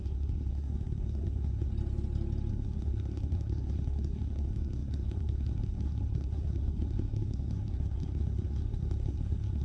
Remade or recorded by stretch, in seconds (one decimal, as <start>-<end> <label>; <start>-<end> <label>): 0.0-1.7 remade; 1.7-2.5 recorded; 2.5-9.6 remade